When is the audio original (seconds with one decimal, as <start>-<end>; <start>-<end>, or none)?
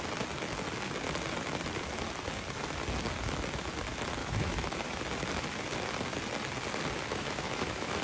0.0-4.2; 5.0-7.1